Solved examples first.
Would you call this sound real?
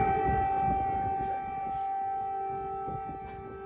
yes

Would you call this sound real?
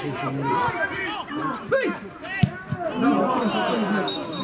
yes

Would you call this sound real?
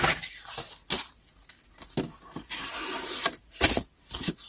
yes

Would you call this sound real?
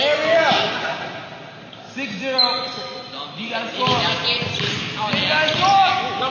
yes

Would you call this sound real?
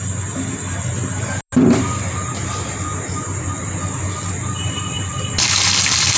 yes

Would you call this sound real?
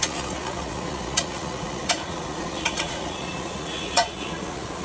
no